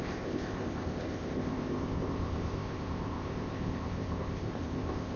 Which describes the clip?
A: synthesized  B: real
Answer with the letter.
A